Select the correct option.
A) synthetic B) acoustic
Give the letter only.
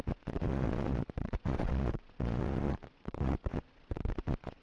A